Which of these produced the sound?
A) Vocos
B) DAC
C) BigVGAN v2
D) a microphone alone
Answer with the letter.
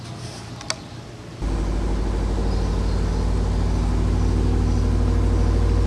D